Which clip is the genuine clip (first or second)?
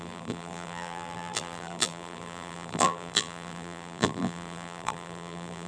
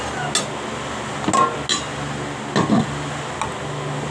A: second